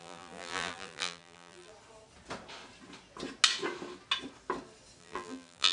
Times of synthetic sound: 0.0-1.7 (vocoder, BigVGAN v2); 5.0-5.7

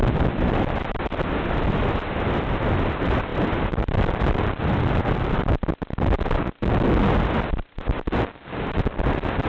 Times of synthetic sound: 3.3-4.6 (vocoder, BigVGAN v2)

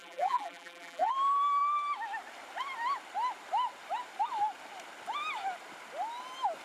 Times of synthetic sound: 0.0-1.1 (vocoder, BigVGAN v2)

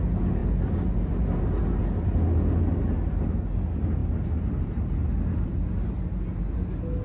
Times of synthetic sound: none

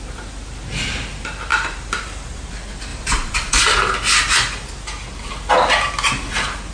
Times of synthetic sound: 1.5-2.5 (vocoder, BigVGAN v2); 2.9-3.6